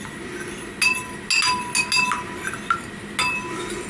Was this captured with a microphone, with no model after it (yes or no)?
yes